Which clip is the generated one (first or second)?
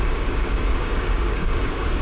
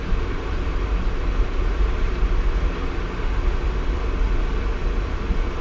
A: first